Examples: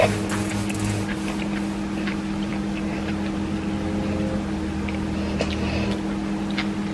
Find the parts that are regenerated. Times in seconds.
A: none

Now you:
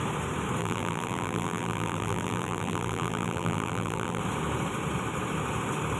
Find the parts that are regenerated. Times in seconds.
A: 0.6-4.2 (vocoder, BigVGAN v2)

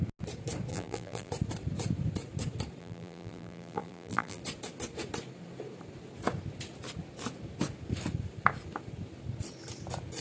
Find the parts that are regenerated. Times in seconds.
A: 0.7-1.3 (vocoder, BigVGAN v2); 2.8-4.4

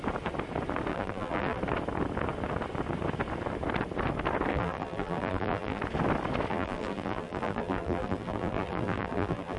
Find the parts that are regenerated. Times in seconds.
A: 0.9-1.6 (vocoder, BigVGAN v2); 4.5-5.8; 6.5-9.6

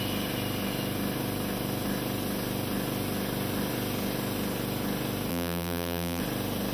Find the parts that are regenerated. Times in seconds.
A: 5.3-6.2 (vocoder, BigVGAN v2)